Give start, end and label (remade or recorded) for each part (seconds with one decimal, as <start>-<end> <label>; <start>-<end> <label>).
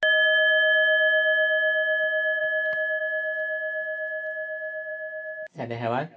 0.0-6.2 recorded